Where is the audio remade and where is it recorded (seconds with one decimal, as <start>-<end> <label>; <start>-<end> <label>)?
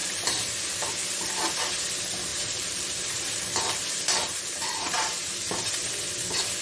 0.0-0.9 remade; 0.9-2.3 recorded; 2.3-5.7 remade; 5.7-6.6 recorded